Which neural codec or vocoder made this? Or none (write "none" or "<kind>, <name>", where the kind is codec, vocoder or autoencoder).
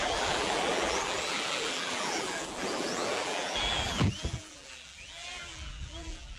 vocoder, BigVGAN v2